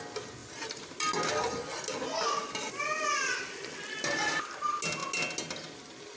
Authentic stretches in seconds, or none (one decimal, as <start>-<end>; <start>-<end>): 0.0-6.2